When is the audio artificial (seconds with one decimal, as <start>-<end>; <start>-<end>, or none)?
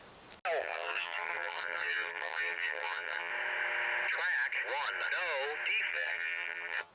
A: 0.6-3.3; 5.9-6.9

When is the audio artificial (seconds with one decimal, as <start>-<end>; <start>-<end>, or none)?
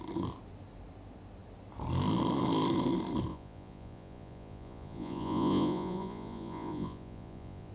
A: 3.3-7.7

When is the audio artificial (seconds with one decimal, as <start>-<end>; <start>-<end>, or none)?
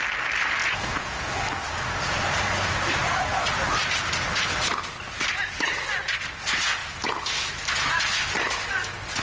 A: 0.6-1.4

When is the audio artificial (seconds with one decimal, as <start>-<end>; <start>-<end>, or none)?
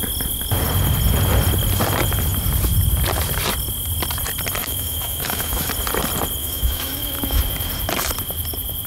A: 4.6-5.7; 6.4-7.4